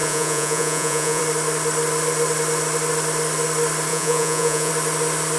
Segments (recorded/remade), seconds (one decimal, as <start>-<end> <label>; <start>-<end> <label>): 0.0-1.2 remade; 1.2-3.9 recorded; 3.9-4.7 remade; 4.7-5.4 recorded